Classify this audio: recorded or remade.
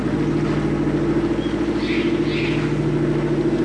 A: recorded